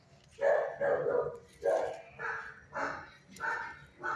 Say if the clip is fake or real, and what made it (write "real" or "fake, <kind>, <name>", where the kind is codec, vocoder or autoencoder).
real